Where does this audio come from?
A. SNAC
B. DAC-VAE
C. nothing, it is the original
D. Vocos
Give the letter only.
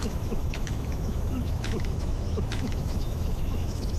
B